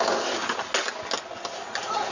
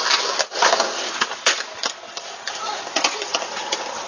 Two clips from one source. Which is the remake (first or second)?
second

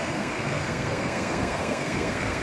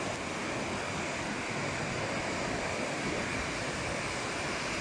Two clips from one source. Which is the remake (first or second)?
first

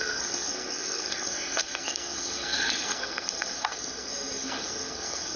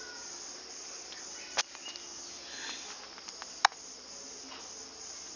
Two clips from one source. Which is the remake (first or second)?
first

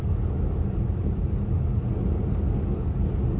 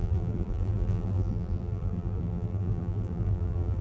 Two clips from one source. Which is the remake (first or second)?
second